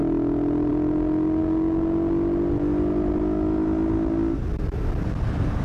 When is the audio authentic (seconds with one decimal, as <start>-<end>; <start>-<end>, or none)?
0.0-5.6